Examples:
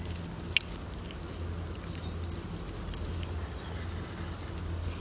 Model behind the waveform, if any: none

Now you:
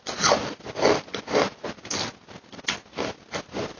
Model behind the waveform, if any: none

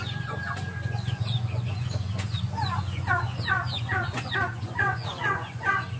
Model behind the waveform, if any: vocoder, Vocos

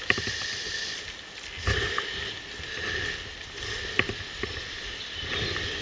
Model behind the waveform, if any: none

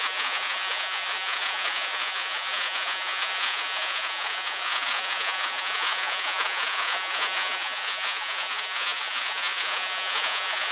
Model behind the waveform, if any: vocoder, Vocos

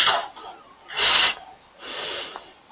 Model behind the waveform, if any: none